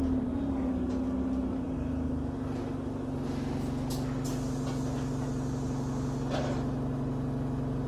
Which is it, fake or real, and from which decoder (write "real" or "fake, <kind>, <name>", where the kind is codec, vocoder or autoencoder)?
real